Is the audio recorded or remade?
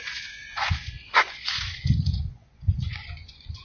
remade